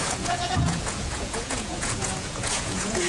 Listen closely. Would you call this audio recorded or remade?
remade